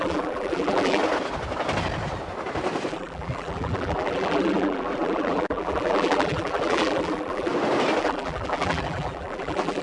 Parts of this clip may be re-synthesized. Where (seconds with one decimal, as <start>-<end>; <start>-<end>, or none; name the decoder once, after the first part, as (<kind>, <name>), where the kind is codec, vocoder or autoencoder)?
0.0-1.0 (vocoder, BigVGAN v2); 2.9-7.5; 8.0-9.8

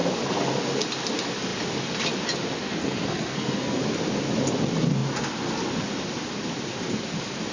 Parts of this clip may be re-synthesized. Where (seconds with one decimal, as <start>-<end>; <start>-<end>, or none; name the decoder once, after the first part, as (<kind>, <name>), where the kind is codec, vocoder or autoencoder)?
2.6-3.8 (codec, SNAC)

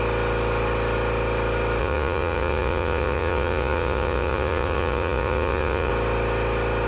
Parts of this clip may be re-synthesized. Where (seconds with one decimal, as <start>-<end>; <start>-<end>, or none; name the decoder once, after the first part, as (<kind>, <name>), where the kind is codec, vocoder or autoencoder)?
1.8-5.9 (vocoder, Vocos)